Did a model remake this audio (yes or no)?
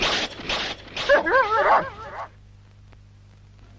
no